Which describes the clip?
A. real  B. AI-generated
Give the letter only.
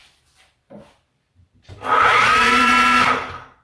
B